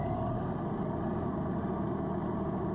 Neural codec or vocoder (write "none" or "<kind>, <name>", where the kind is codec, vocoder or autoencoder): none